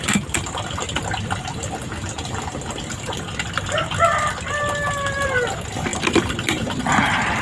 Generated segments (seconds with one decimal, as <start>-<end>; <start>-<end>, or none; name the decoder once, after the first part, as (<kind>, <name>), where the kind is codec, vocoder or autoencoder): none